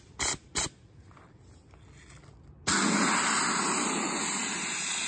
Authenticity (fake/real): real